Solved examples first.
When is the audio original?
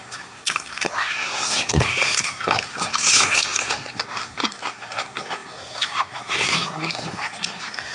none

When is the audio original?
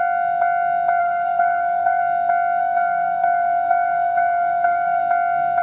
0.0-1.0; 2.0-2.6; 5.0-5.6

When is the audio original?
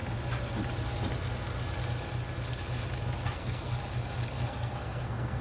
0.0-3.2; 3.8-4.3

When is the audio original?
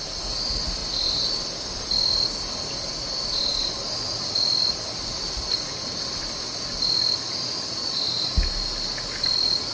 0.0-9.7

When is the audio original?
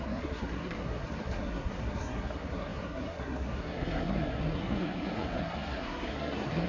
none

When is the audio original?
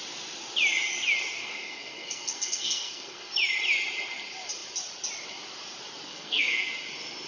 0.0-1.4; 3.3-6.1; 6.7-7.3